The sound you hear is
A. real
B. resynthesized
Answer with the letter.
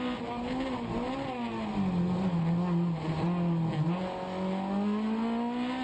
A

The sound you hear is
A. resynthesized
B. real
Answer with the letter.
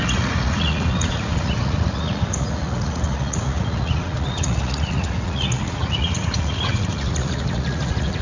A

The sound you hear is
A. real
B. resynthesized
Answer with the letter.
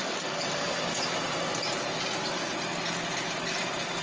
A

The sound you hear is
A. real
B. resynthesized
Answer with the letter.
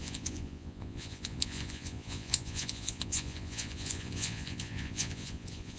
B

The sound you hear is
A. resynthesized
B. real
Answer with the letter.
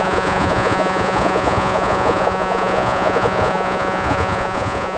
A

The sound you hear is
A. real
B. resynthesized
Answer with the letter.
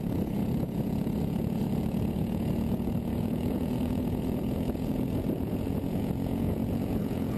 B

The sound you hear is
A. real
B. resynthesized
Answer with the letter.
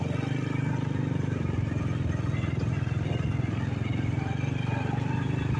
A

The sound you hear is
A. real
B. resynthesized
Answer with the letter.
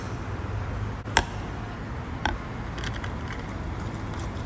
A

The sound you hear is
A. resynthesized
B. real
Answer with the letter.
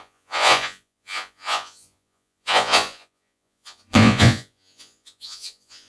A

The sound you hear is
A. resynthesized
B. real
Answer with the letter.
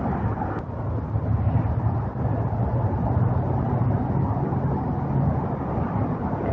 B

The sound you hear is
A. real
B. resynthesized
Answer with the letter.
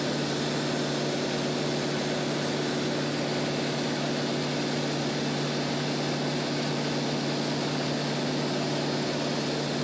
A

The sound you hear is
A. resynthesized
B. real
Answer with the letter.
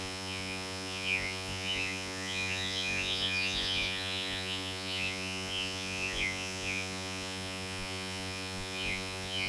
A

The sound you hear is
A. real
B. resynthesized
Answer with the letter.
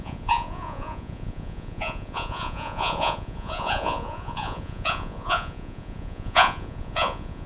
B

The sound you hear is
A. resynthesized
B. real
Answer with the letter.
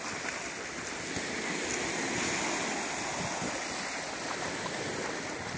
B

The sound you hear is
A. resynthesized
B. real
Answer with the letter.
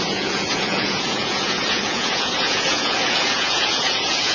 A